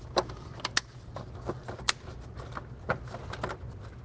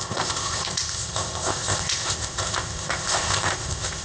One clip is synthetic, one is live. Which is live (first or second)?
first